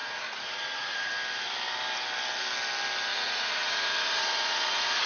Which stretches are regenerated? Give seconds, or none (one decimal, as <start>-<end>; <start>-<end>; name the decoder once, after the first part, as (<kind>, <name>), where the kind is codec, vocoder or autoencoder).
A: 0.0-1.1 (vocoder, Vocos); 3.1-5.1